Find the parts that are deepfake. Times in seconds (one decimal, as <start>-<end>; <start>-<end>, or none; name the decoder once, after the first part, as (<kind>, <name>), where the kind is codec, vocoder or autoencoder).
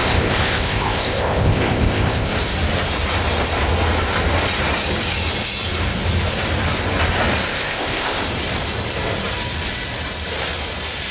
0.0-2.3 (codec, ZipCodec); 7.5-8.2